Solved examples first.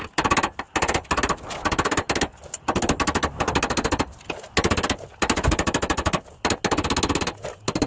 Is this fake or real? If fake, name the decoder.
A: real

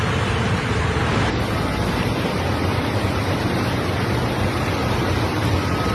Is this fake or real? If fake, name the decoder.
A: fake, vocoder, BigVGAN v2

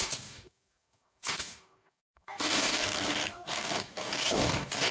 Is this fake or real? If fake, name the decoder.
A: fake, codec, DAC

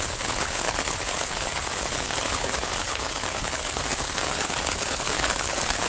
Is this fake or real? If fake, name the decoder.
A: fake, codec, HILCodec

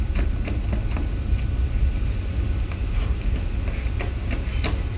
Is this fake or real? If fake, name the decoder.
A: real